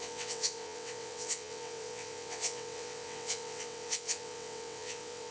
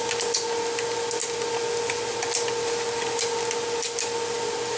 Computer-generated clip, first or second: first